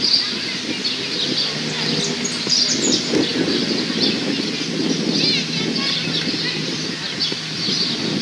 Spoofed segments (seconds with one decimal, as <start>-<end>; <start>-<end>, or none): none